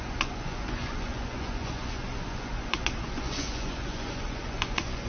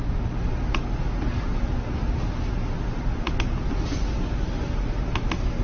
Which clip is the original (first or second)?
second